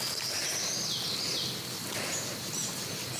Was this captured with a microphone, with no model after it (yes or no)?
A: yes